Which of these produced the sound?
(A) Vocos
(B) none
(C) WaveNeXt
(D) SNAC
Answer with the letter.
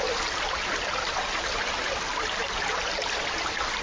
B